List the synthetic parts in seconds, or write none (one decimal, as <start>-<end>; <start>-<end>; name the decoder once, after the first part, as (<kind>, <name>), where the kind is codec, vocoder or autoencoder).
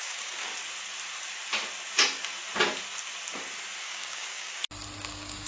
0.0-0.5 (codec, DAC); 3.8-4.6; 5.1-5.5